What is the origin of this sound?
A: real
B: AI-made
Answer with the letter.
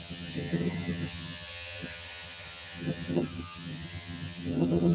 B